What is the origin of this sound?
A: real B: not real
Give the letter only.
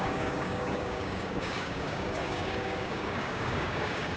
B